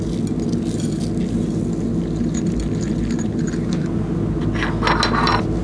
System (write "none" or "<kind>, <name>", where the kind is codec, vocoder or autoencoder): none